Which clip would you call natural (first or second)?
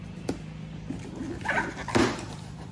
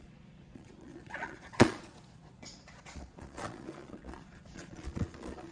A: first